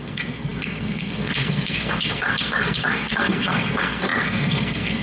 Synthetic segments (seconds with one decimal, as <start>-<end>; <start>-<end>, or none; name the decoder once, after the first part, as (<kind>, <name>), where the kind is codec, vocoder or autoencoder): 0.0-5.0 (codec, SNAC)